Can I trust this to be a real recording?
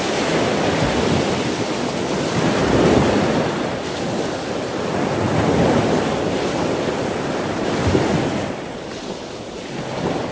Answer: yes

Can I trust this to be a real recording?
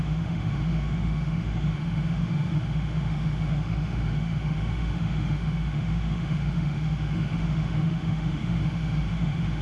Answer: no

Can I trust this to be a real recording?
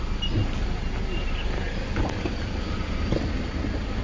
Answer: yes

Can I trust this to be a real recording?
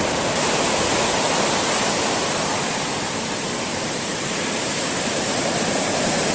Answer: no